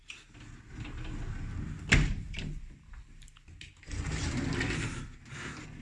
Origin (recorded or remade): recorded